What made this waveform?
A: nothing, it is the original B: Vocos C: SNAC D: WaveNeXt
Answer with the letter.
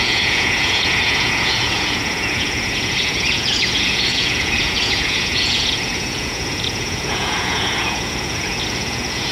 B